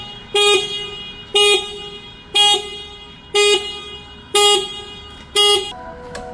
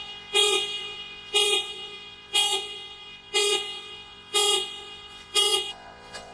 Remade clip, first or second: second